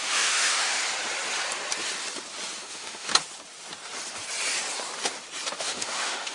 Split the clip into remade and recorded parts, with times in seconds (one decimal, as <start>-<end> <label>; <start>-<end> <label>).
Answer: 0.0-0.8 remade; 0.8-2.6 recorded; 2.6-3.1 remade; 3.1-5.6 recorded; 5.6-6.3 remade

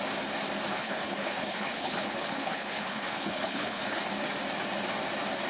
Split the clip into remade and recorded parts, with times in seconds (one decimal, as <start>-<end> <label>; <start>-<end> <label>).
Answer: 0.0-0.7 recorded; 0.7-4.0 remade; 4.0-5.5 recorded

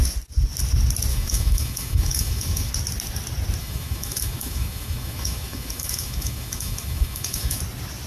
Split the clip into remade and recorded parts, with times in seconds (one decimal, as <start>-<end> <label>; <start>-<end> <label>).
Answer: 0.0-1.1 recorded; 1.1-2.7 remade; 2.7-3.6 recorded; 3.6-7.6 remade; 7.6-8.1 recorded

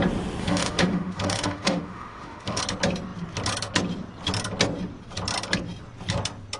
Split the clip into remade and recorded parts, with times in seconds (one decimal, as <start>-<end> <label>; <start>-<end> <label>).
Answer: 0.0-0.4 recorded; 0.4-2.6 remade; 2.6-6.6 recorded

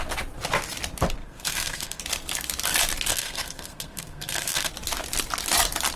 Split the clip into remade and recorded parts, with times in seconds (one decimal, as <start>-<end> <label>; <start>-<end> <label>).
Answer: 0.0-1.2 recorded; 1.2-2.0 remade; 2.0-3.1 recorded; 3.1-4.7 remade; 4.7-6.0 recorded